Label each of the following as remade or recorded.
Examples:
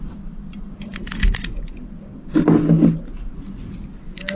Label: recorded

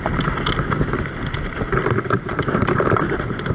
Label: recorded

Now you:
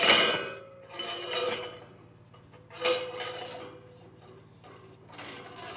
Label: recorded